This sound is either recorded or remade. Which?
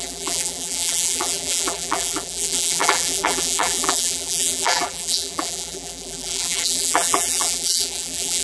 remade